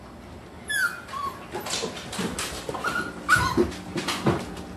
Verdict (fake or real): real